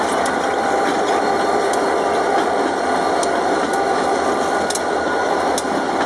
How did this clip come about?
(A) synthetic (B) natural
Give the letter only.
B